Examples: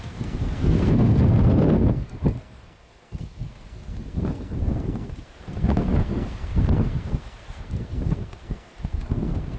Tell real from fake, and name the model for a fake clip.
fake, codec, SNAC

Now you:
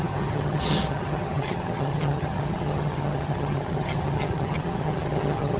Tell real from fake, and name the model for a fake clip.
fake, vocoder, HiFi-GAN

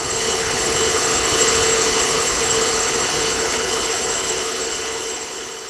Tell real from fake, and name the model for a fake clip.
fake, codec, HILCodec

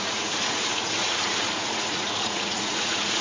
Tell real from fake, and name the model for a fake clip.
fake, vocoder, Vocos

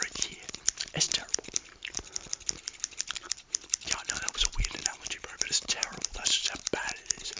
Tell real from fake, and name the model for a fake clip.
real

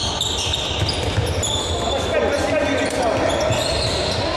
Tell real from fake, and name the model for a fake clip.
real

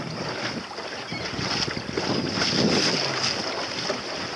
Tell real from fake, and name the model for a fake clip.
real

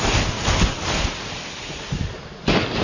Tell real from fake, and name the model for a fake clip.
real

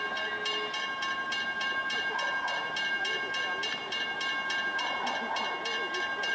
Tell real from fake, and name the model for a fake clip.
real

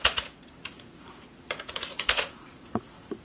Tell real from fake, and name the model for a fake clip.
fake, vocoder, Vocos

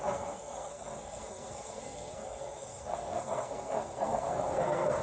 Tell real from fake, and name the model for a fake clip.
fake, codec, SNAC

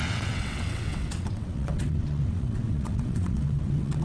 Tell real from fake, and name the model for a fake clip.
fake, vocoder, WaveNeXt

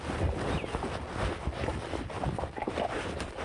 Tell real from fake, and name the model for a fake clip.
real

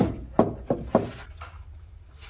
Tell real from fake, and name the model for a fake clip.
real